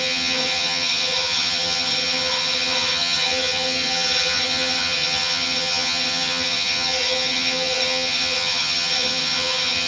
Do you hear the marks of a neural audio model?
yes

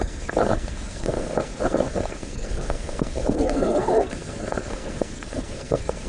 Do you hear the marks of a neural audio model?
yes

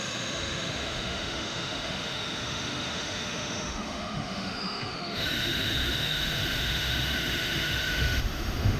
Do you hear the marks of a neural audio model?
yes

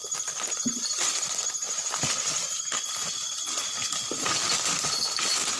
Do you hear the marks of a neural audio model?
no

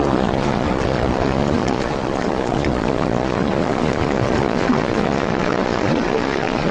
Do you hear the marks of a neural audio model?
yes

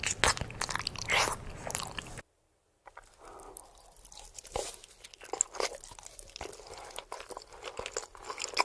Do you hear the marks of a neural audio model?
no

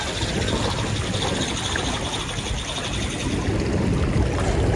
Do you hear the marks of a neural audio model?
no